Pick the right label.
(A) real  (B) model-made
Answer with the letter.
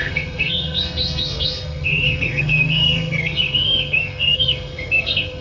B